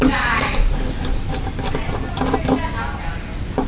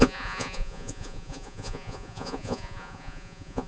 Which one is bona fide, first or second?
first